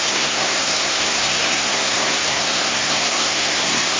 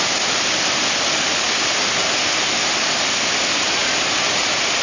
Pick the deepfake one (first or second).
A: first